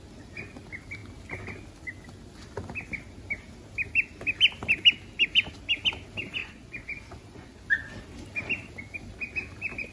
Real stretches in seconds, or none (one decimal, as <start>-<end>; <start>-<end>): 0.0-6.4; 7.6-9.9